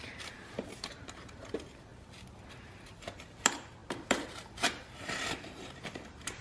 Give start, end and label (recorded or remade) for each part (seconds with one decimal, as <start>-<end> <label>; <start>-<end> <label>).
0.0-1.9 remade; 1.9-2.5 recorded; 2.5-6.4 remade